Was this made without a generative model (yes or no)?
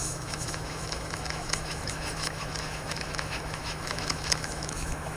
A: no